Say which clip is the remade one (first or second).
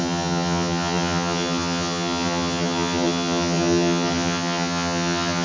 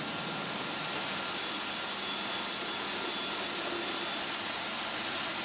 first